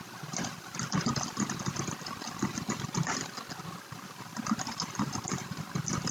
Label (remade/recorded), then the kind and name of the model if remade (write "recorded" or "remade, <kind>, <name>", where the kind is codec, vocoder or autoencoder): recorded